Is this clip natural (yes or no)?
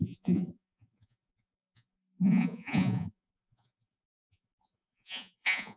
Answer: no